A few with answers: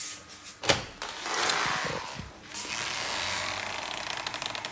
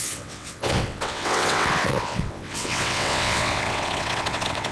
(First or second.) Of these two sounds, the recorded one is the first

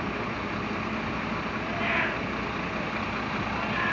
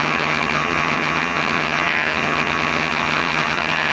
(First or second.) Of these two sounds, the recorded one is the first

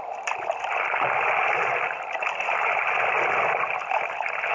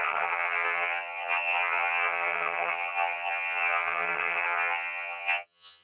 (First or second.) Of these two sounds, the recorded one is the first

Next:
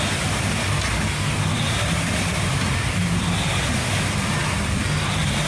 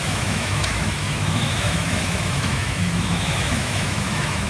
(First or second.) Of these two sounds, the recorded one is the first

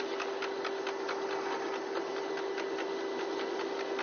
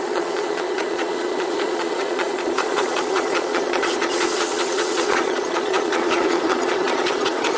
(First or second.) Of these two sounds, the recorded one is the first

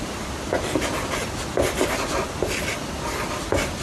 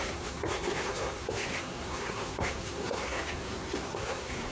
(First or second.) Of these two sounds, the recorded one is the first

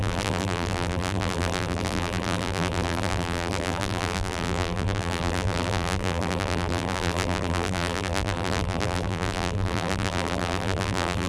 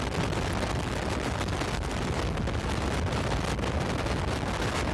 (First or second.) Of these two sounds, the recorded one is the second